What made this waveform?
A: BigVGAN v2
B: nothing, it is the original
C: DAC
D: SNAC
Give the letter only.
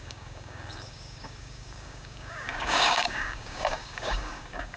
C